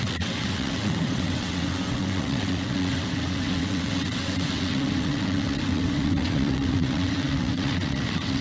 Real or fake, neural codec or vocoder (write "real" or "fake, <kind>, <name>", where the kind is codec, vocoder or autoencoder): fake, vocoder, WaveNeXt